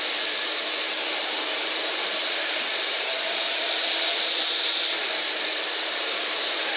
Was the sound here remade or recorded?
remade